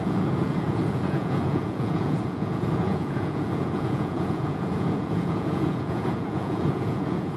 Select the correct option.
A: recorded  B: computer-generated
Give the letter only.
B